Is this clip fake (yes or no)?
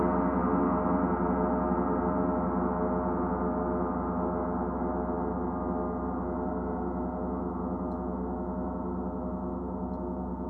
no